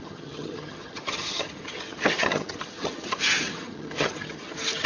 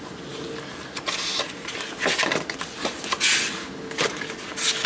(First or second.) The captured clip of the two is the second